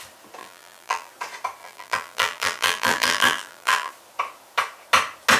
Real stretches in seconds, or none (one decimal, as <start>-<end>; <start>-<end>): 0.0-0.4; 1.1-1.6; 3.9-5.4